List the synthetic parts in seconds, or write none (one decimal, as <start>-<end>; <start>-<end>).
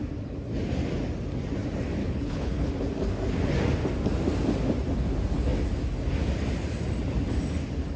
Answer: 2.0-2.7